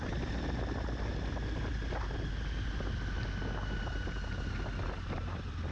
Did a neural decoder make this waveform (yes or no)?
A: no